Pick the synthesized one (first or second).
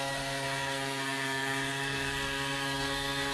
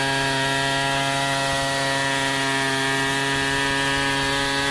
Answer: first